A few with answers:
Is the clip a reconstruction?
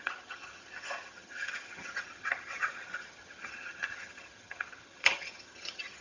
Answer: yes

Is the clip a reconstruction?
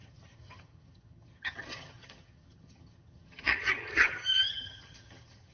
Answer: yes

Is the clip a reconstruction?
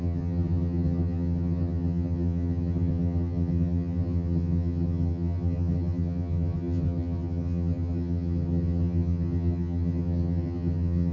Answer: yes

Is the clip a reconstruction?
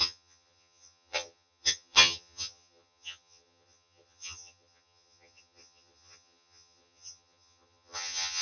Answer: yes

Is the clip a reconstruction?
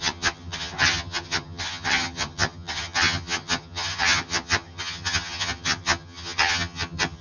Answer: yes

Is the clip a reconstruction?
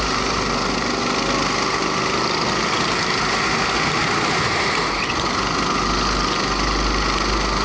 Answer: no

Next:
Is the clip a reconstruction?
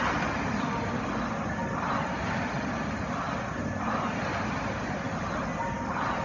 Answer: no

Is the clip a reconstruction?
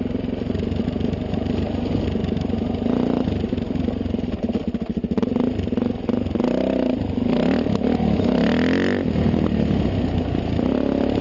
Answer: no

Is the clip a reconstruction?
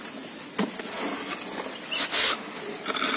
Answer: no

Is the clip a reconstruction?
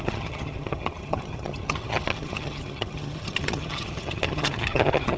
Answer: yes